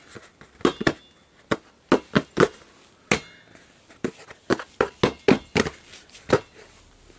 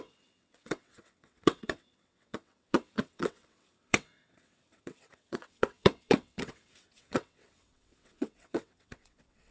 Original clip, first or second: first